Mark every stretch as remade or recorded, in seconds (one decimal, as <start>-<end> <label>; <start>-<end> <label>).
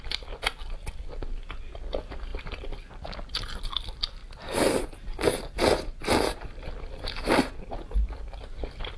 0.0-9.0 recorded